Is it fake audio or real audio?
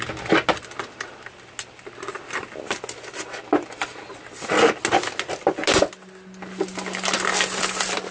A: real